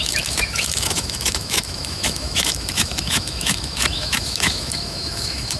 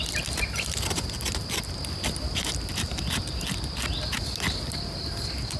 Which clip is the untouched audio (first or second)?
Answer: second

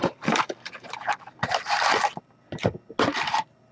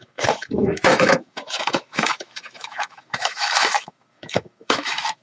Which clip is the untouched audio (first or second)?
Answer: first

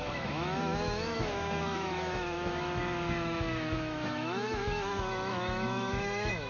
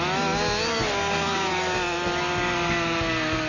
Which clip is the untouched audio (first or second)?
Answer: second